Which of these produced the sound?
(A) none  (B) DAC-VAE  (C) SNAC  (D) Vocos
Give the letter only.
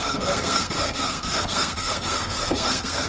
C